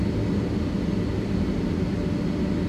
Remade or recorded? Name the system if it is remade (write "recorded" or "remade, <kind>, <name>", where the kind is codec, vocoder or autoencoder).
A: recorded